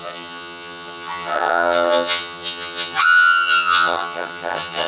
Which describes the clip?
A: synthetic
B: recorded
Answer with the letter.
A